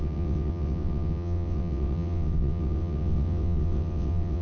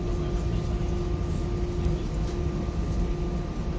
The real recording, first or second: second